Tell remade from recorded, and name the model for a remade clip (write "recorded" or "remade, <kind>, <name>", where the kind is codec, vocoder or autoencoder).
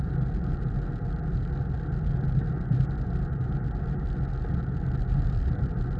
recorded